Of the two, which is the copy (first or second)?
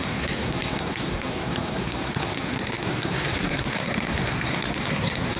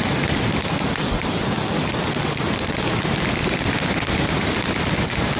first